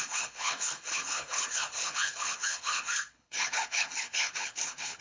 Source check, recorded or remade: remade